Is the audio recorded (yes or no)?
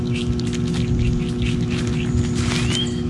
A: yes